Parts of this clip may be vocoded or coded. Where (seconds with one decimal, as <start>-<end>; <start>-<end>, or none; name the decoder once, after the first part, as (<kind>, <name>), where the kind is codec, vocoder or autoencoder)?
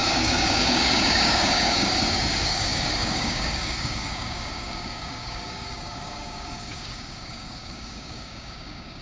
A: 0.0-9.0 (codec, DAC)